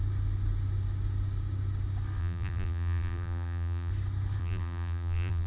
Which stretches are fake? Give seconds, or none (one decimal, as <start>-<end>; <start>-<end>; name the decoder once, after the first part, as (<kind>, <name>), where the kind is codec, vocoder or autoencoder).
2.2-3.9 (vocoder, BigVGAN v2); 4.4-5.5